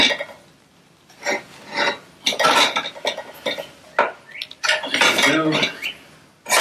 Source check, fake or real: real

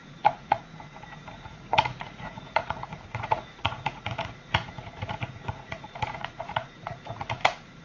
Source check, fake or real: fake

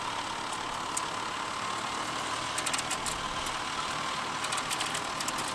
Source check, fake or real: real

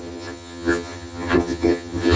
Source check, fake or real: fake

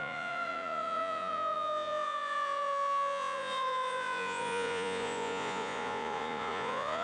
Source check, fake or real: fake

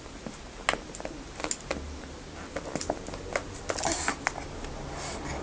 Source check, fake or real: real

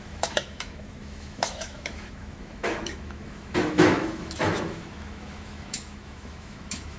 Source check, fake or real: fake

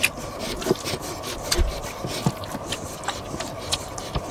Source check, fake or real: real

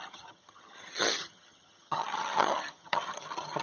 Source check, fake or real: fake